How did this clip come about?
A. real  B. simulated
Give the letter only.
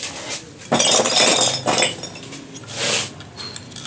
A